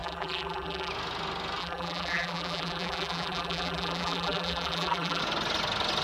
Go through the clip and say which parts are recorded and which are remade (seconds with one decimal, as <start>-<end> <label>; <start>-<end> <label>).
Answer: 0.0-0.9 remade; 0.9-1.6 recorded; 1.6-5.2 remade; 5.2-6.0 recorded